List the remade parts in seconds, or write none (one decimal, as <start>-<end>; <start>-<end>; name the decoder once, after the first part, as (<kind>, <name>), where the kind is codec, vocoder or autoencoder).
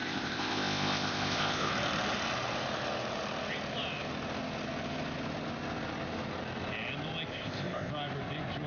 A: 0.0-1.7 (codec, ZipCodec); 7.3-7.9